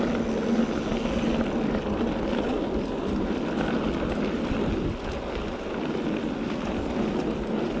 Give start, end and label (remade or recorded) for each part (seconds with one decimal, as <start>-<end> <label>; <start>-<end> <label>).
0.0-7.8 recorded

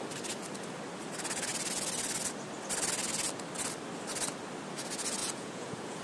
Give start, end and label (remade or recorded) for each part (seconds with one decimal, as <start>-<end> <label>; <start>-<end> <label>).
0.0-5.2 recorded; 5.2-6.0 remade

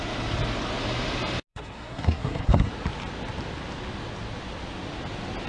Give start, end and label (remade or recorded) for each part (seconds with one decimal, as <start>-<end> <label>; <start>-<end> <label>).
0.0-1.5 recorded; 1.5-2.7 remade; 2.7-5.5 recorded

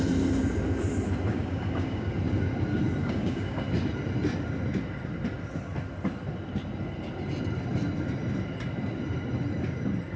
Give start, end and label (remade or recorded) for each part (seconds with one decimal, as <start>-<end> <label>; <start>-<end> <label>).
0.0-1.3 recorded; 1.3-2.1 remade; 2.1-3.0 recorded; 3.0-3.6 remade; 3.6-10.2 recorded

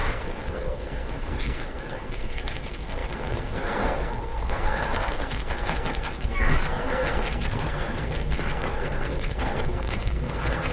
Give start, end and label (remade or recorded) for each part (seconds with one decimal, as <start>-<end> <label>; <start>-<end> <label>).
0.0-10.7 remade

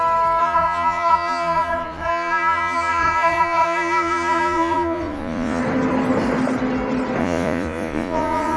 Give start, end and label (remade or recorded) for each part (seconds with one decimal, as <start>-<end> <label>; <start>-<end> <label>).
0.0-0.4 recorded; 0.4-5.6 remade; 5.6-7.2 recorded; 7.2-8.6 remade